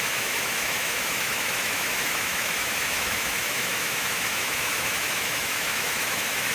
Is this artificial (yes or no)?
yes